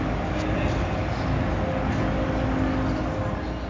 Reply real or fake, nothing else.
real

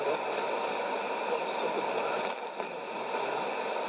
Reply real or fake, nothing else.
real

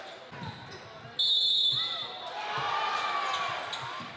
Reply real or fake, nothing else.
real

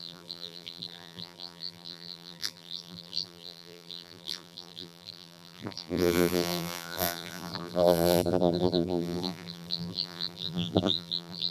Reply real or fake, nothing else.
fake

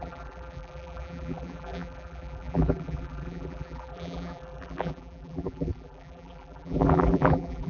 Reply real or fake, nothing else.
fake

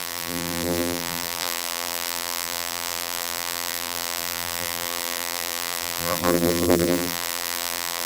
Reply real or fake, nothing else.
fake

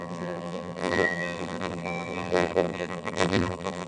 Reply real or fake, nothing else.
fake